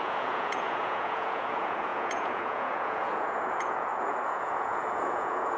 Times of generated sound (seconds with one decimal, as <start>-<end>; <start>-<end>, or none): 0.0-5.6